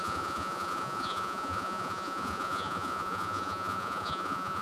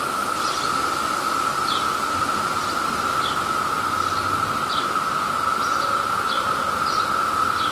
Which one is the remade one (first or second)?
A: first